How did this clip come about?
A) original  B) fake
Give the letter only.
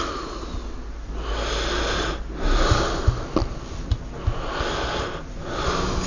A